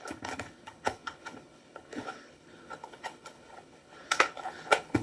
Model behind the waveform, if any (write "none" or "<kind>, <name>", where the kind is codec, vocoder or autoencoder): codec, HILCodec